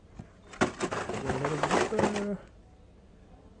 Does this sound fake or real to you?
real